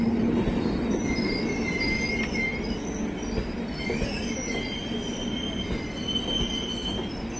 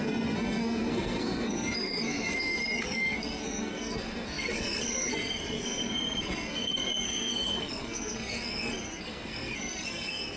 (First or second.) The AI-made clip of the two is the second